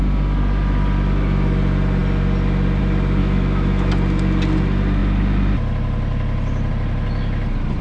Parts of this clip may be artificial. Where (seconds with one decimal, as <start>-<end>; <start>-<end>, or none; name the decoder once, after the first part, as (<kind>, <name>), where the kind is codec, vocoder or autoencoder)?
3.2-3.9 (autoencoder, DAC-VAE)